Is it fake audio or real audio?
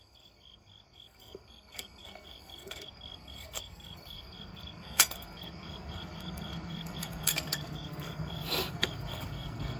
fake